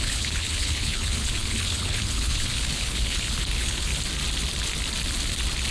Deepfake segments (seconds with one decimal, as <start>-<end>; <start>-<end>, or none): 0.0-3.9